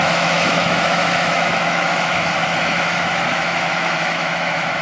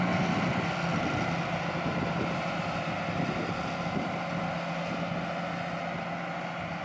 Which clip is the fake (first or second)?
first